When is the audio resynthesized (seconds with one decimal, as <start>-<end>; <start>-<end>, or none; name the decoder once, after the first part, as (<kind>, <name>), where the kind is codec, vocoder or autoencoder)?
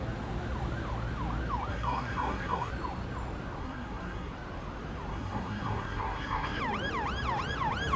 1.7-2.7 (codec, SNAC); 3.6-4.3; 5.1-6.6